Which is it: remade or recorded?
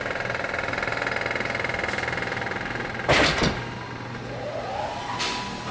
recorded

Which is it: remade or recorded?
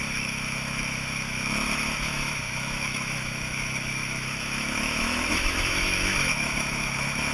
remade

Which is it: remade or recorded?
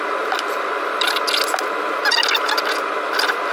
recorded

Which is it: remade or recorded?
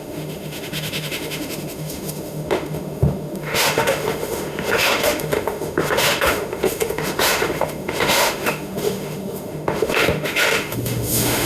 remade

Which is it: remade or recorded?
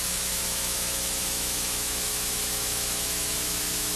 remade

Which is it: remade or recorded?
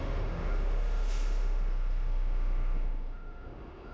remade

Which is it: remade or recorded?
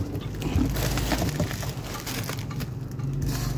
recorded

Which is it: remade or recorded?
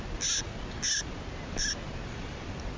recorded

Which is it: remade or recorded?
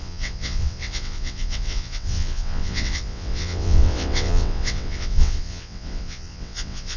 remade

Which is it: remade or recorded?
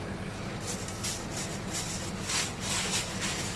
recorded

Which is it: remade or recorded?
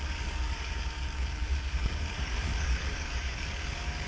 remade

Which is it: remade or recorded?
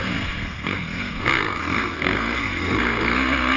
remade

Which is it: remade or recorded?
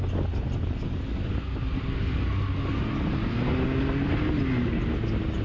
recorded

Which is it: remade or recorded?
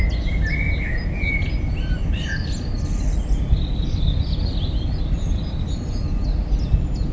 recorded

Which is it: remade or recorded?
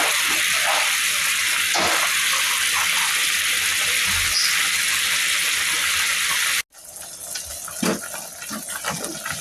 recorded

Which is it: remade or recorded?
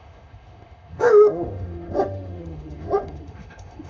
remade